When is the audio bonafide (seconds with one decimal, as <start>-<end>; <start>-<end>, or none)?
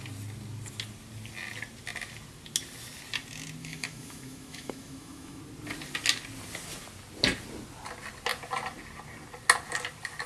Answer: 0.0-3.6; 5.4-10.3